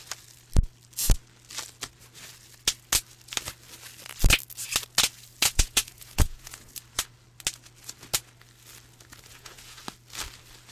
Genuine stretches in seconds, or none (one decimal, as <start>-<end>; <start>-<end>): 0.0-5.5; 6.7-9.3; 9.8-10.7